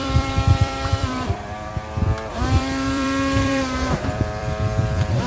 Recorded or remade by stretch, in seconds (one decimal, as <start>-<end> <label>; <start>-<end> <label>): 0.0-1.7 remade; 1.7-2.3 recorded; 2.3-5.3 remade